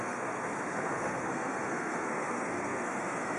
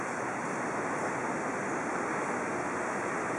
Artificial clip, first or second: first